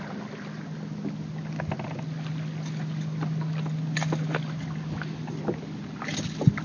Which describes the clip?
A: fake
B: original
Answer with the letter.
B